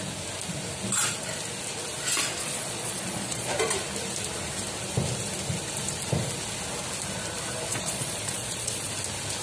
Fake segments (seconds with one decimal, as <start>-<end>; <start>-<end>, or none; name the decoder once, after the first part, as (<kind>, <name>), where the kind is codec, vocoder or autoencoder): 2.4-3.5 (vocoder, Vocos); 7.7-8.9